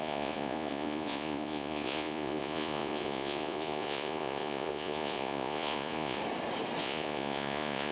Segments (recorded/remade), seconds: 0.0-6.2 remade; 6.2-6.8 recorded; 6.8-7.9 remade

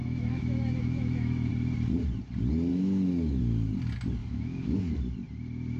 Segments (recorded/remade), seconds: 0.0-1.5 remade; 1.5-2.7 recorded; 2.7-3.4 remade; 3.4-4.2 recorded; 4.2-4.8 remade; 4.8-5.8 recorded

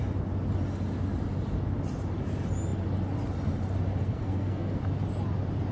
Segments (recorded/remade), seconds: 0.0-4.0 recorded; 4.0-4.8 remade; 4.8-5.7 recorded

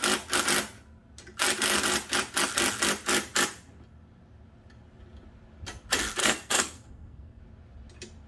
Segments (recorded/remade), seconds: 0.0-6.2 recorded; 6.2-7.4 remade; 7.4-8.3 recorded

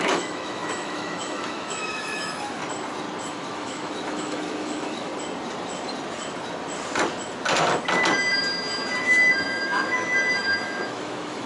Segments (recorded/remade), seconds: 0.0-2.6 remade; 2.6-3.3 recorded; 3.3-5.1 remade; 5.1-9.0 recorded; 9.0-11.5 remade

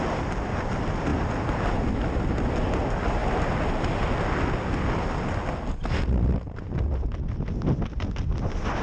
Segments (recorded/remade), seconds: 0.0-8.8 recorded

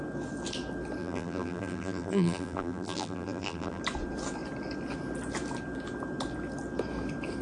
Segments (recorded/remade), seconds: 0.0-1.0 recorded; 1.0-3.8 remade; 3.8-7.4 recorded